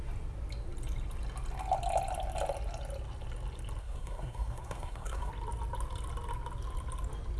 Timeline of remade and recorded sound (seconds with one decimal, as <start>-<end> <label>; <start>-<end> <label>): 0.0-3.8 recorded; 3.8-5.3 remade; 5.3-7.4 recorded